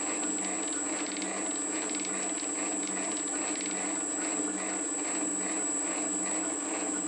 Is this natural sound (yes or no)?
yes